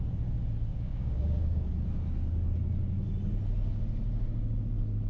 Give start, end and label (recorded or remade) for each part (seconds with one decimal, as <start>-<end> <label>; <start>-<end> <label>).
0.0-0.7 recorded; 0.7-1.7 remade; 1.7-5.1 recorded